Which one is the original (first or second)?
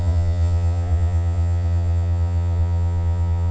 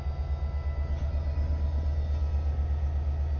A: second